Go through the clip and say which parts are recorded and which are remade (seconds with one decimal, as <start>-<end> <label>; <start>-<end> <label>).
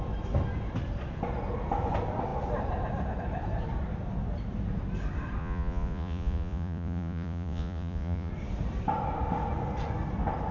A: 0.0-5.4 recorded; 5.4-8.3 remade; 8.3-10.5 recorded